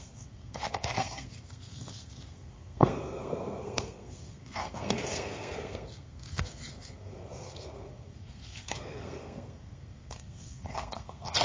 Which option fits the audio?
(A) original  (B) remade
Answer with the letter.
B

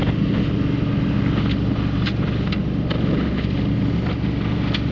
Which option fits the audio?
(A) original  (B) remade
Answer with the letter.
A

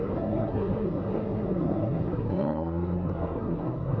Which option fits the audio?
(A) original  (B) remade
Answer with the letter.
B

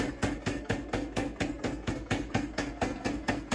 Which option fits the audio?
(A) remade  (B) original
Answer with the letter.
A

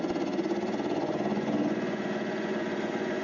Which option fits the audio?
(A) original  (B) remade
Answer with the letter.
B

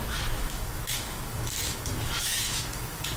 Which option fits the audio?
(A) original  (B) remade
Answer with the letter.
B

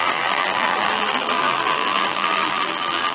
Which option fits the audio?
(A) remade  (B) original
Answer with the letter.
A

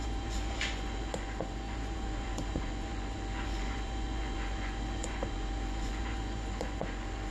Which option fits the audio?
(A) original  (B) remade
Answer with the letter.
B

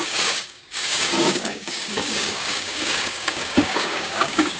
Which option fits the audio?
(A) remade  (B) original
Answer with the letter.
A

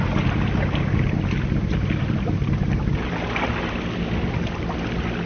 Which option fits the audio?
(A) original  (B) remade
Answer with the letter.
A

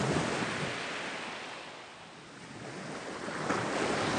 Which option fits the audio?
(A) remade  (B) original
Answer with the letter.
B